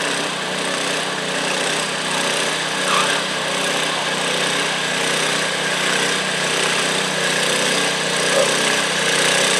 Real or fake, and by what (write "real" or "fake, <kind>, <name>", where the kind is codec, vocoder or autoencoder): real